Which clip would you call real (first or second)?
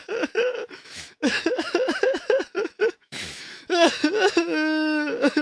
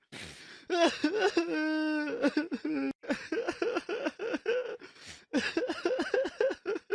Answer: second